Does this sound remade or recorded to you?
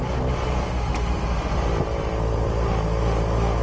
recorded